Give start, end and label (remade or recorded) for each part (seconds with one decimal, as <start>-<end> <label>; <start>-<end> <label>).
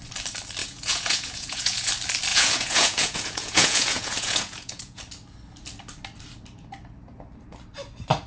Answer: 0.0-0.6 recorded; 0.6-1.9 remade; 1.9-2.3 recorded; 2.3-5.0 remade; 5.0-8.3 recorded